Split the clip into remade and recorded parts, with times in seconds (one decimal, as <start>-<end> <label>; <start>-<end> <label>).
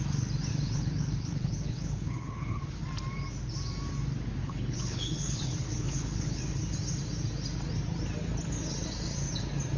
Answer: 0.0-0.5 recorded; 0.5-2.6 remade; 2.6-4.4 recorded; 4.4-6.4 remade; 6.4-9.8 recorded